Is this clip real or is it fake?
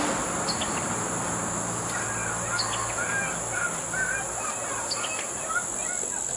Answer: real